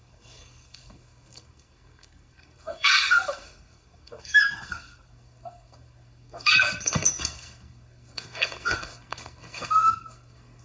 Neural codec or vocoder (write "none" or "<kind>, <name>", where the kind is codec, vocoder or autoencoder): codec, SNAC